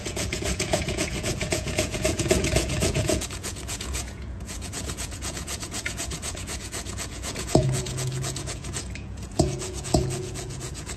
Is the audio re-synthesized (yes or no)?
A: yes